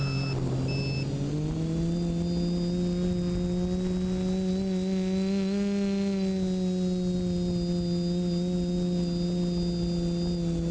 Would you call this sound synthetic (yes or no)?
no